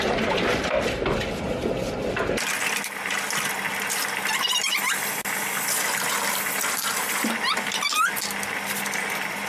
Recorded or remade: recorded